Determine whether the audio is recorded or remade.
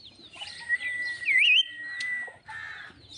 recorded